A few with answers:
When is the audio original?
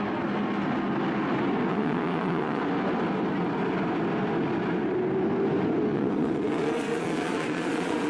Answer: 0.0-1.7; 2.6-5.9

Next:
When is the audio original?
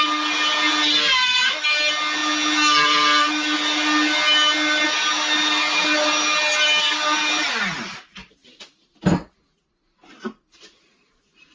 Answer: 0.0-11.5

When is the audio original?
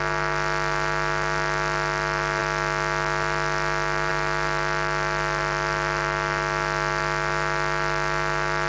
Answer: 0.0-8.7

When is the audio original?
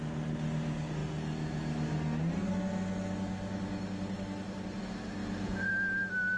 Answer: 0.0-5.2; 5.7-6.4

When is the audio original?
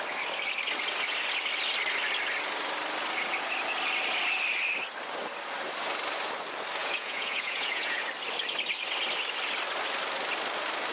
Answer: 0.0-6.8; 8.0-10.9